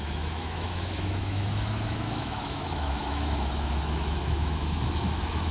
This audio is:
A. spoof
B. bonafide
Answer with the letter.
A